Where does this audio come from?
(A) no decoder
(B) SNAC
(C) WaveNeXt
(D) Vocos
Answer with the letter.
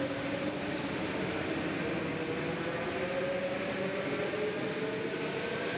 A